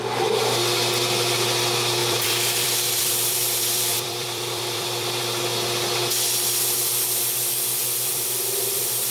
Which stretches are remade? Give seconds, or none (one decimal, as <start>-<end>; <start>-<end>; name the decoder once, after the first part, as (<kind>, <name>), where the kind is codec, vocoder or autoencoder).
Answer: 2.0-5.4 (vocoder, BigVGAN v2); 7.8-9.1